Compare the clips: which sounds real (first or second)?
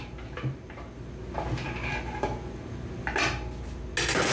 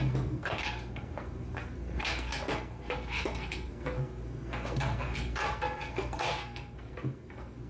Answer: first